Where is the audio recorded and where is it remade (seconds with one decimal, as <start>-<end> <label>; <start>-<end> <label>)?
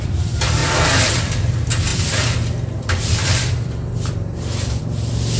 0.0-0.6 remade; 0.6-1.1 recorded; 1.1-5.4 remade